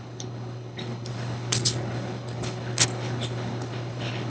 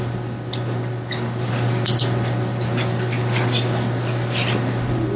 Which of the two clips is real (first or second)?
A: second